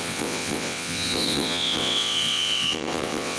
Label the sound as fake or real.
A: fake